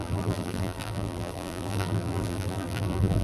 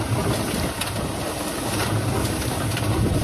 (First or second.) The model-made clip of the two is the first